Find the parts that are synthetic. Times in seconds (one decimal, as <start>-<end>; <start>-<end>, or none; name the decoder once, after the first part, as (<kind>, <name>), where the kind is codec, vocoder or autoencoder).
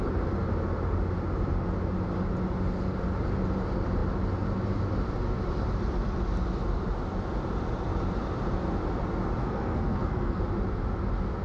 9.4-10.4 (codec, SNAC)